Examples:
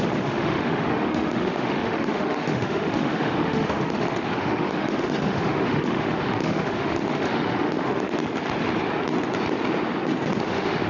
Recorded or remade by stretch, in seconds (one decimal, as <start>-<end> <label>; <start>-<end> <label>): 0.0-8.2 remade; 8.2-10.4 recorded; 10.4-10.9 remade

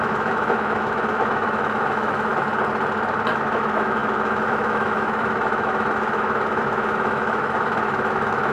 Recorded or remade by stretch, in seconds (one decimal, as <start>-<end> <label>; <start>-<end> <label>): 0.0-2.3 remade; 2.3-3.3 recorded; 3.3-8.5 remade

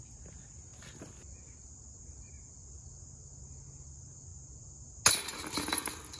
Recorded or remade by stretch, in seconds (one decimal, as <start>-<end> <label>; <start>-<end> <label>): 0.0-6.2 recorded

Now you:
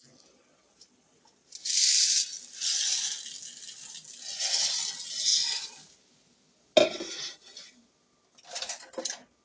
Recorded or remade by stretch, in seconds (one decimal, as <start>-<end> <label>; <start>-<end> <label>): 0.0-9.4 recorded

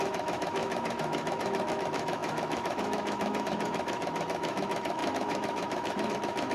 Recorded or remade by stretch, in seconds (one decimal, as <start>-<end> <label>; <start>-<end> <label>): 0.0-6.5 remade

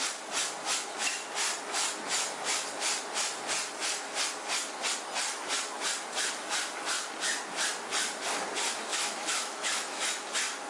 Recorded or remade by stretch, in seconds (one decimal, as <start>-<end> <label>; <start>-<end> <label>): 0.0-8.9 recorded; 8.9-10.1 remade; 10.1-10.7 recorded

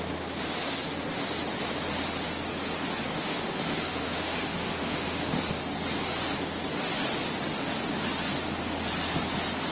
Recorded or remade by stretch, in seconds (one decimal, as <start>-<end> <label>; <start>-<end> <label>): 0.0-3.1 recorded; 3.1-5.4 remade; 5.4-9.7 recorded